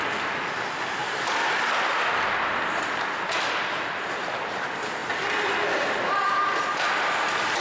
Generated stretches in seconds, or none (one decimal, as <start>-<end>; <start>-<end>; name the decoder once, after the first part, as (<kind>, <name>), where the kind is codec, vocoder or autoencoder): 0.0-1.0 (vocoder, BigVGAN v2); 3.8-5.0; 6.1-7.6